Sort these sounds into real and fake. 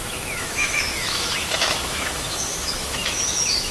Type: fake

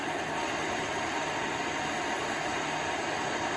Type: real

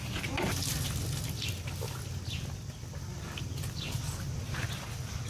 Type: real